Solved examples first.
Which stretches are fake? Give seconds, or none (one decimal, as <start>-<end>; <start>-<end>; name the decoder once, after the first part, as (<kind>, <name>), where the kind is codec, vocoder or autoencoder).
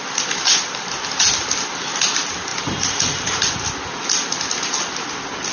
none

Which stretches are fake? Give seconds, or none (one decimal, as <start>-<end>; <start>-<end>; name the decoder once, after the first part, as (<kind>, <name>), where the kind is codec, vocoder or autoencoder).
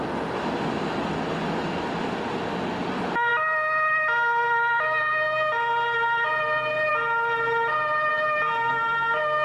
none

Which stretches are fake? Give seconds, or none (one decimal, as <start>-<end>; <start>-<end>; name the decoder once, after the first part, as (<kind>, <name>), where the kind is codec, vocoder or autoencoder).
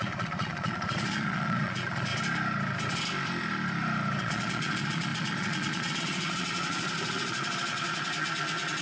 0.0-2.1 (vocoder, Vocos); 4.2-8.8